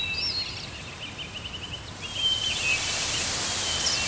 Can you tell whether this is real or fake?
real